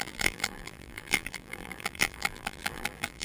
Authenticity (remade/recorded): remade